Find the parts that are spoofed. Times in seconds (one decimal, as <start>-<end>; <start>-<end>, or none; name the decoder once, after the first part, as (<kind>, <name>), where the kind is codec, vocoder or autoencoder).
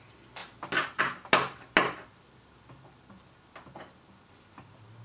none